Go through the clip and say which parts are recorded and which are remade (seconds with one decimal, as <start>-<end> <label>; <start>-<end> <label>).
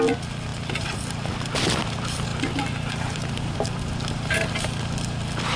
0.0-0.5 recorded; 0.5-1.3 remade; 1.3-2.3 recorded; 2.3-4.3 remade; 4.3-5.6 recorded